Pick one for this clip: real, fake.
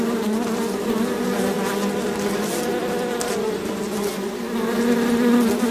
real